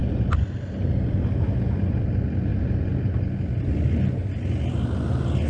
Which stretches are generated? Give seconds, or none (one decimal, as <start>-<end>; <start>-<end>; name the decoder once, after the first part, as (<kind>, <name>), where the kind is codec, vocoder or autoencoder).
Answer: none